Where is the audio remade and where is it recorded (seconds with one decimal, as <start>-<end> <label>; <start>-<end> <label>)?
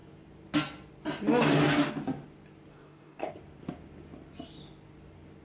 0.0-2.7 recorded; 2.7-3.3 remade; 3.3-5.4 recorded